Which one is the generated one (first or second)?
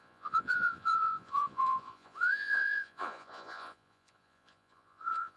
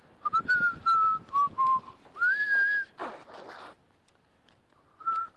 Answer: first